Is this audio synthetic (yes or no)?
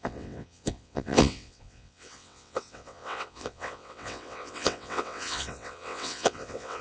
yes